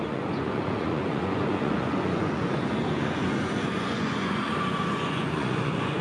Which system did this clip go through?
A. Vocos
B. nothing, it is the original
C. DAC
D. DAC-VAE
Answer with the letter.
A